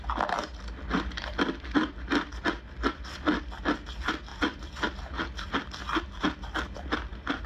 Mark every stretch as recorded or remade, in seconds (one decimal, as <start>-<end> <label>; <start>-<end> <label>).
0.0-7.5 recorded